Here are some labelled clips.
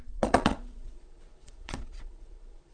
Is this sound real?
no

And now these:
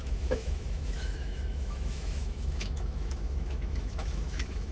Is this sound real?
no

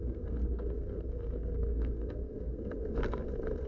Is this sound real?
no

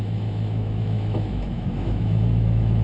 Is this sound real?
no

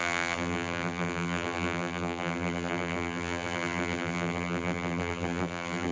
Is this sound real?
no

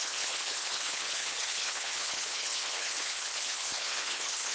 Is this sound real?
no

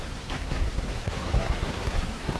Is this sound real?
no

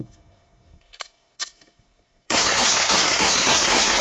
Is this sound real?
no